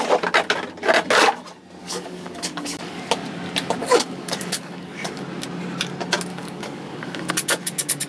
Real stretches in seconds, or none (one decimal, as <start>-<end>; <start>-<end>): 0.0-1.8; 3.0-3.8; 5.2-6.3; 7.3-8.1